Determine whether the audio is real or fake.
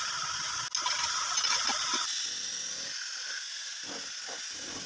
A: real